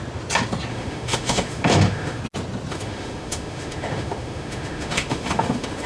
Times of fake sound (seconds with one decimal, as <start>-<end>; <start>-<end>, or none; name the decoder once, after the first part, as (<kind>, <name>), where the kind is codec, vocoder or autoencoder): 0.7-2.2 (autoencoder, DAC-VAE); 2.7-5.9